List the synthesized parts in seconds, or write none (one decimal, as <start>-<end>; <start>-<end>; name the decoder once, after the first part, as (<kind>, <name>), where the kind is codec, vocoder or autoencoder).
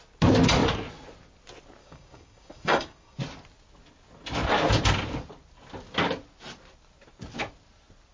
1.8-3.2 (codec, DAC)